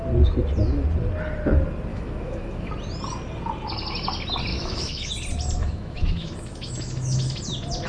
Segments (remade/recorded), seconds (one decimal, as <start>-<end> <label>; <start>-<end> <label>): 0.0-1.9 recorded; 1.9-2.7 remade; 2.7-4.5 recorded; 4.5-5.1 remade; 5.1-5.6 recorded; 5.6-7.4 remade; 7.4-7.9 recorded